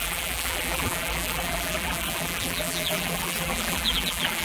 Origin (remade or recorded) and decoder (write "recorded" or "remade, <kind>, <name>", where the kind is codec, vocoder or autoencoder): remade, vocoder, BigVGAN v2